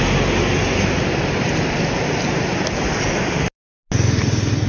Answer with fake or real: real